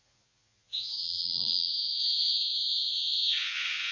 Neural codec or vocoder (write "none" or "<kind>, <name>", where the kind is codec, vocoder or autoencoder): vocoder, Vocos